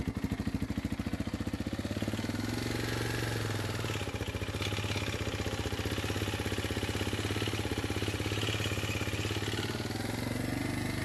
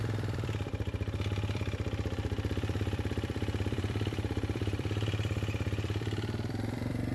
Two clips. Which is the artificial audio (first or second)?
second